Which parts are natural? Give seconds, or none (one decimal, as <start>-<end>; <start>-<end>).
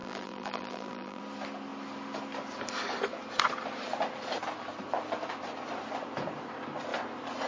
1.2-7.5